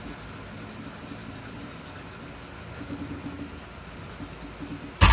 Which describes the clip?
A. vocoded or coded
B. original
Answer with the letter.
B